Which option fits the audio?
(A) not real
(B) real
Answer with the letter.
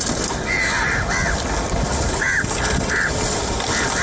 B